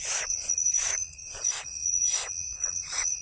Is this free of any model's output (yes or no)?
no